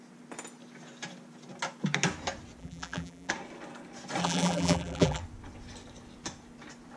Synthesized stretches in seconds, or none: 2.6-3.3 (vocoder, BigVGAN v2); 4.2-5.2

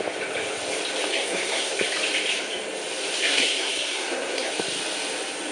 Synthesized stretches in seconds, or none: 1.1-1.7 (codec, SNAC); 3.2-4.5

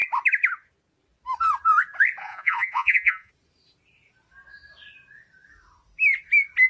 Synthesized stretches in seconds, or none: 2.2-3.3 (vocoder, Vocos)

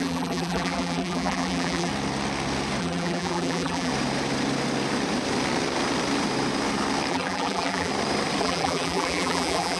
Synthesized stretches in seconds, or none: 0.0-1.9 (vocoder, BigVGAN v2); 2.8-3.9; 7.1-7.9; 8.4-9.8

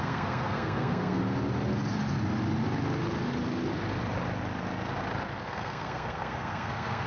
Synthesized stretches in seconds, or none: 0.0-1.2 (codec, SNAC); 5.4-7.1

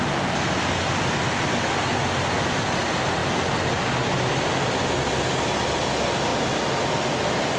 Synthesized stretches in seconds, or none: none

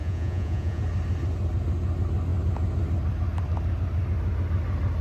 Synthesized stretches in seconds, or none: 0.0-0.8 (vocoder, Vocos)

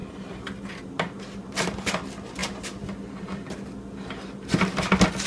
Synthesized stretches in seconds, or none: 0.0-0.8 (vocoder, BigVGAN v2)